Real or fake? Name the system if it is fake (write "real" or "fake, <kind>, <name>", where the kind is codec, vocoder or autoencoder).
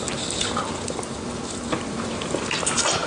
real